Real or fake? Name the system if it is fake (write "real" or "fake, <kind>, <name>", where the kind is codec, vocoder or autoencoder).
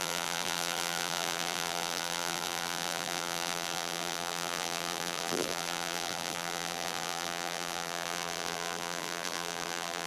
fake, vocoder, BigVGAN v2